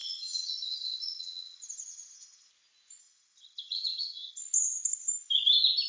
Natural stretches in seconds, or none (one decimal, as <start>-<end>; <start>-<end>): 2.5-3.0; 4.4-5.9